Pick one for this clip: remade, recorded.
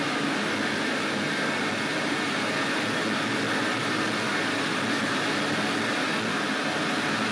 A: recorded